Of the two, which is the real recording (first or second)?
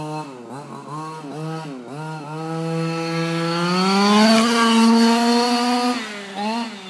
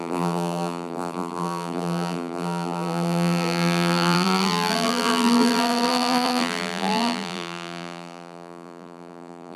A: first